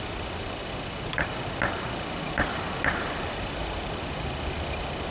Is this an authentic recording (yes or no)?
yes